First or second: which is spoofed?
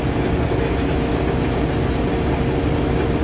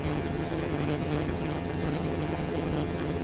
second